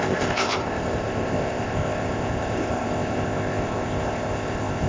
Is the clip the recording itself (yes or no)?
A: no